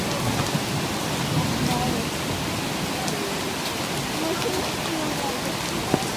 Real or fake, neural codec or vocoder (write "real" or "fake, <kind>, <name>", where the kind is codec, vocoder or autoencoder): real